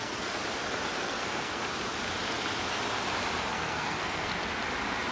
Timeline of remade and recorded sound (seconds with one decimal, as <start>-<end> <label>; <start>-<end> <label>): 0.0-0.4 remade; 0.4-1.0 recorded; 1.0-1.6 remade; 1.6-3.5 recorded; 3.5-4.3 remade; 4.3-5.1 recorded